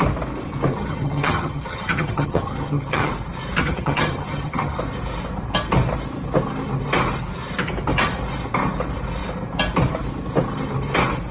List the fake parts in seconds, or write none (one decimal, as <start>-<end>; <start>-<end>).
0.7-3.1; 3.6-4.8

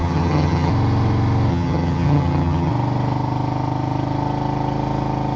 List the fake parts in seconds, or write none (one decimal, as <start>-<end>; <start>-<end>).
0.0-0.7; 1.5-2.7